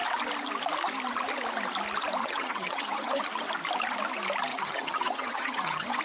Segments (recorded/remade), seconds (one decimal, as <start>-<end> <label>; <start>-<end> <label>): 0.0-2.2 recorded; 2.2-3.2 remade; 3.2-4.5 recorded; 4.5-6.0 remade